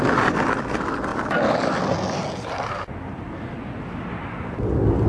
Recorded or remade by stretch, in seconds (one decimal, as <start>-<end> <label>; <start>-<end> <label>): 0.0-5.1 recorded